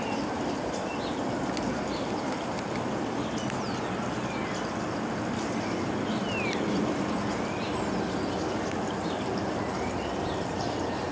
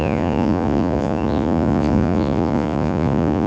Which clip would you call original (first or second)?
first